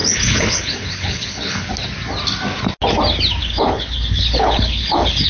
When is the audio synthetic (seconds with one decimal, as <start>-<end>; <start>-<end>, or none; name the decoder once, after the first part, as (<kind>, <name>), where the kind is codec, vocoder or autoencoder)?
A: 0.0-1.7 (codec, HILCodec); 3.4-5.3